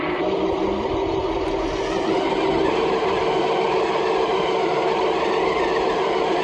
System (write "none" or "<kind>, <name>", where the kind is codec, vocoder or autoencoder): none